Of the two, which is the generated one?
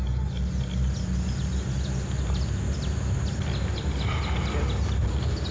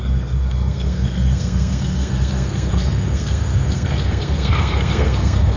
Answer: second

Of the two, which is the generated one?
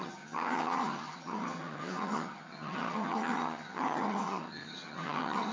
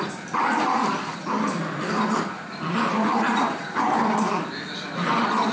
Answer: first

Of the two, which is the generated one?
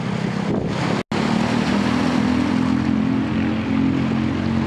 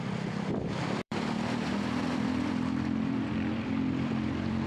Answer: second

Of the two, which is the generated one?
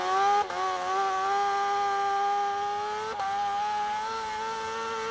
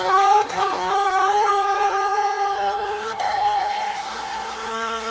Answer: second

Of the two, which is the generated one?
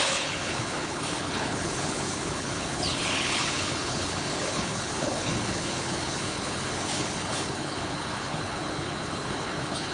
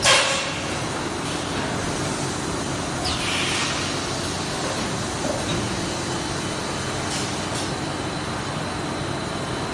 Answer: first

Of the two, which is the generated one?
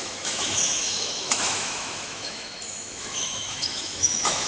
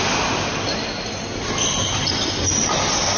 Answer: first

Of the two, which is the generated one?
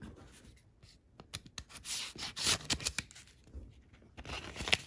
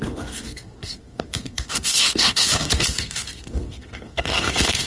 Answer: second